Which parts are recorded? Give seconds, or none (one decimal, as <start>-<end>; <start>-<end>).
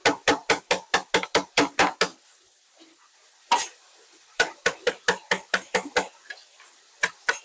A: 0.0-2.1; 4.9-7.4